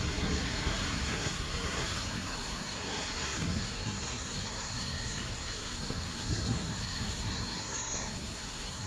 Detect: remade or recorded remade